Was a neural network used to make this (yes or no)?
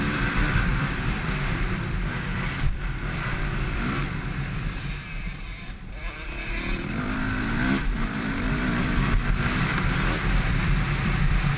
yes